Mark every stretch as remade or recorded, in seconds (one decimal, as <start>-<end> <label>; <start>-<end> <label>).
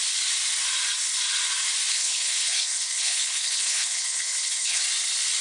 0.0-1.9 recorded; 1.9-4.8 remade; 4.8-5.4 recorded